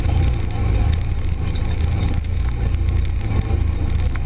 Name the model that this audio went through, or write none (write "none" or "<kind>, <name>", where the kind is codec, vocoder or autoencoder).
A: none